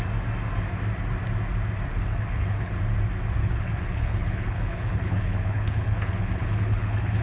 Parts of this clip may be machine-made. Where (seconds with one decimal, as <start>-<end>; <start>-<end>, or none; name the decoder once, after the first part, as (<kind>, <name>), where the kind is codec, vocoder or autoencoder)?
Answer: 1.9-2.8 (codec, HILCodec); 3.4-7.2